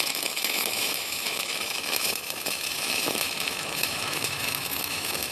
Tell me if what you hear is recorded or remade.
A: remade